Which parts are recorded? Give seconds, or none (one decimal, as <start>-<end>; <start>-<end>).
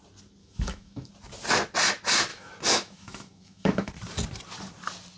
0.0-0.4; 1.1-2.3; 3.9-5.2